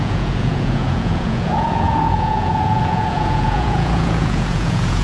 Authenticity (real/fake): fake